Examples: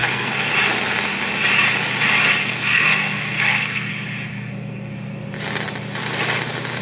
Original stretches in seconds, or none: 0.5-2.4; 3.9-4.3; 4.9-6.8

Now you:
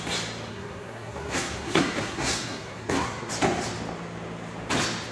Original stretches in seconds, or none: 0.0-0.5; 3.3-5.1

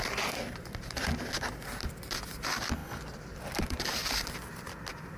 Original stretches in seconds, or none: 0.0-5.2

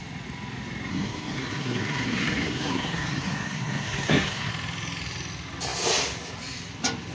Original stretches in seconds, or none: 0.0-0.9; 4.5-7.1

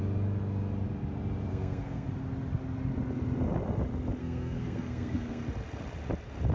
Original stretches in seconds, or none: 0.0-1.5; 2.1-4.2; 5.4-6.5

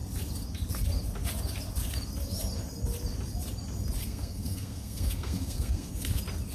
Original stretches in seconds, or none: 0.0-4.0; 5.9-6.5

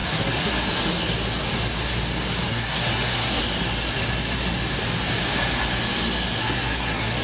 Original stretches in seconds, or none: 0.5-2.5; 3.4-6.4